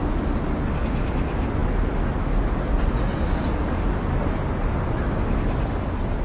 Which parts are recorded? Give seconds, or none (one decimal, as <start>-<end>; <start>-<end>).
0.0-6.2